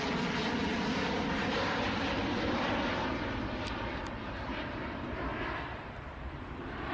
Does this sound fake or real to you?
fake